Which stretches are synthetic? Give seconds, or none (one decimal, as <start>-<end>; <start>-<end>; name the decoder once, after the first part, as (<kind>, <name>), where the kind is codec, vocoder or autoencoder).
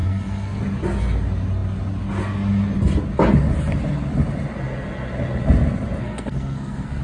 0.0-0.6 (codec, SNAC); 6.0-7.0